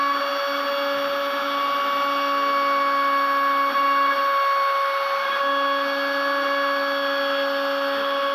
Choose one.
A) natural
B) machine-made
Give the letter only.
A